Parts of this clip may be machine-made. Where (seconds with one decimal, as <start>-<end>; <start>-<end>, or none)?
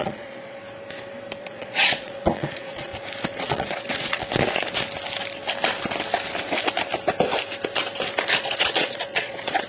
0.0-0.6; 1.4-2.9; 3.4-4.2; 8.4-9.7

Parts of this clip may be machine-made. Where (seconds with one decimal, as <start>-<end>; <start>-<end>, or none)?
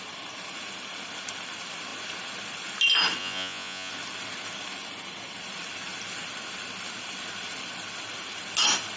3.2-3.9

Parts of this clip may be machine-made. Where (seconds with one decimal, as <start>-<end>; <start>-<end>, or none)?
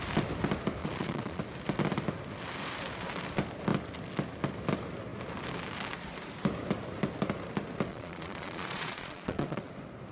0.8-1.4; 7.9-9.7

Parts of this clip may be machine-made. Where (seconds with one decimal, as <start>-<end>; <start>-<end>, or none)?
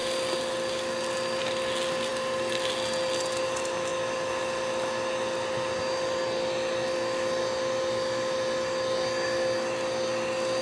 none